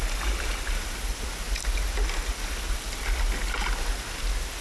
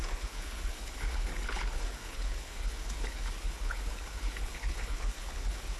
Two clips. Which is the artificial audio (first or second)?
second